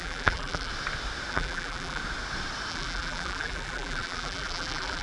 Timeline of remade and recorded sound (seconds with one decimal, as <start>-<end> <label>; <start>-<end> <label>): 0.0-0.7 remade; 0.7-1.3 recorded; 1.3-2.0 remade; 2.0-2.7 recorded; 2.7-5.0 remade